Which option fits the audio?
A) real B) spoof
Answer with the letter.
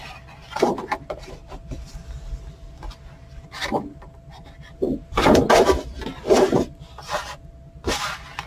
A